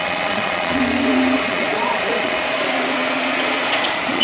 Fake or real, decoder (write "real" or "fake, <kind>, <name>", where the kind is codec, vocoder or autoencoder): fake, vocoder, Vocos